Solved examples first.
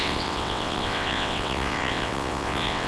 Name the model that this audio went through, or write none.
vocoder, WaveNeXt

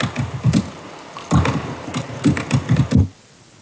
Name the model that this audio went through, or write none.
none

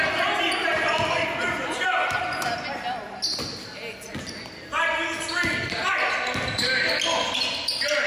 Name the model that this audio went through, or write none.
none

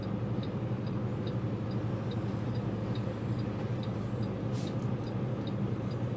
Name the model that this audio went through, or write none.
none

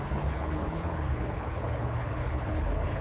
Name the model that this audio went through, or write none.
codec, HILCodec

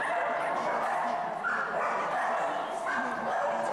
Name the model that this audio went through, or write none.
vocoder, BigVGAN v2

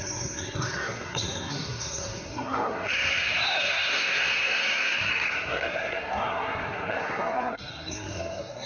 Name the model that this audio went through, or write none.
codec, SNAC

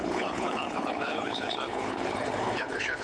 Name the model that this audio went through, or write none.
codec, HILCodec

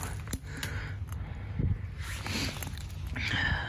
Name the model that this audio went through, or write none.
none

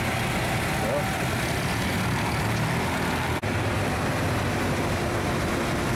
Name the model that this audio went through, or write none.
none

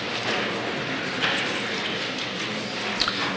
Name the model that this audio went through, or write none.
none